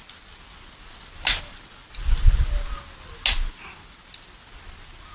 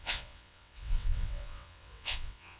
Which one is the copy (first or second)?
second